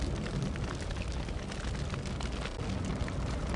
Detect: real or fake real